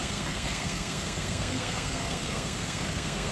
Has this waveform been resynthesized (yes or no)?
yes